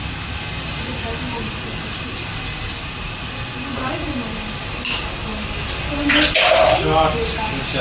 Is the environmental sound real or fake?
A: real